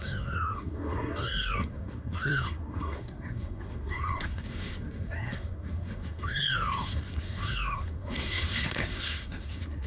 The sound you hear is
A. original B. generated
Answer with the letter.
B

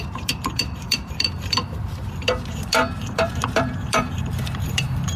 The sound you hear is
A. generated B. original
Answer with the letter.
A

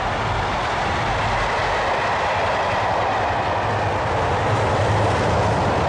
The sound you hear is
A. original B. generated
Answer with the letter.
A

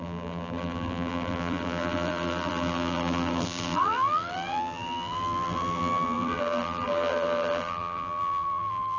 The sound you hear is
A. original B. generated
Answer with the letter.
B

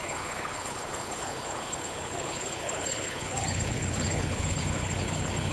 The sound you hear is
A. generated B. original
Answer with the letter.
A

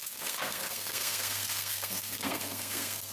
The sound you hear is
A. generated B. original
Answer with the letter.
A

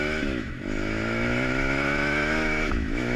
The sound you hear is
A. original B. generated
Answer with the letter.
B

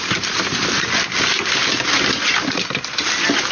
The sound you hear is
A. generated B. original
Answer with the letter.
B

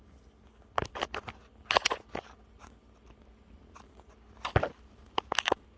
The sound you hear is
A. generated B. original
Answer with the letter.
B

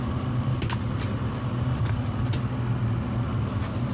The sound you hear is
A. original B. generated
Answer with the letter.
A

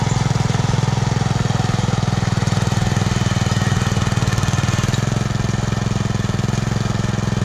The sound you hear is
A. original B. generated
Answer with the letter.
A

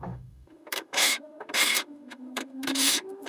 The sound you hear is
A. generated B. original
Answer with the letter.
A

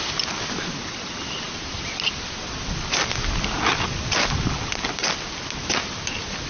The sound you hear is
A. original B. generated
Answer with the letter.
A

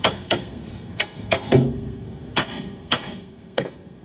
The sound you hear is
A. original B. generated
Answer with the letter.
B